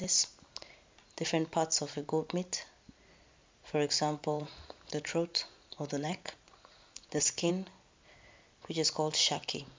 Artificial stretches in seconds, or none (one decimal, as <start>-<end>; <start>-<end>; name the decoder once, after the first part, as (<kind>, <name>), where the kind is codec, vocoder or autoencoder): 3.4-7.5 (vocoder, Vocos)